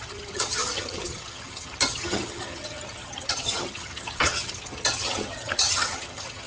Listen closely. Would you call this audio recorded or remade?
remade